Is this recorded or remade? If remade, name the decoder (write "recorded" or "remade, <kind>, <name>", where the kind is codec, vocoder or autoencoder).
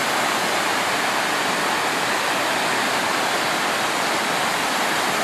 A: recorded